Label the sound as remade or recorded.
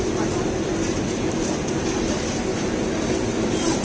recorded